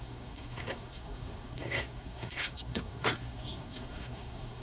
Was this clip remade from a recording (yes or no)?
yes